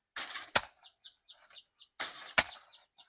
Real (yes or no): yes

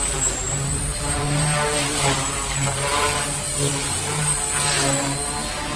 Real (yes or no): no